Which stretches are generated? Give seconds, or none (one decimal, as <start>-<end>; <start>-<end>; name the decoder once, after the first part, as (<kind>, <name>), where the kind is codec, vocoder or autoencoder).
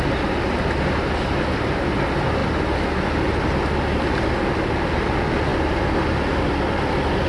none